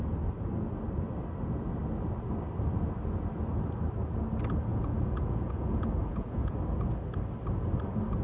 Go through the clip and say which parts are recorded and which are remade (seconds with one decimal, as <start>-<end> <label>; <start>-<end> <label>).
0.0-4.7 recorded; 4.7-6.4 remade; 6.4-8.2 recorded